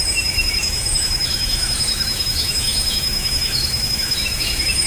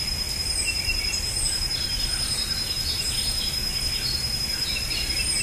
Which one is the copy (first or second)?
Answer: first